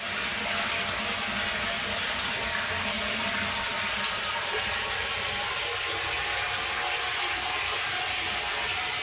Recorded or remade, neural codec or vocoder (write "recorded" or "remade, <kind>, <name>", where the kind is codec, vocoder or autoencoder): recorded